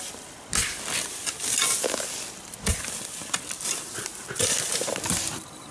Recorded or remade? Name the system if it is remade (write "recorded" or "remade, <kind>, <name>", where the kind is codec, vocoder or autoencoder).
recorded